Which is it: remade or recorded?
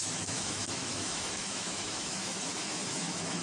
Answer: remade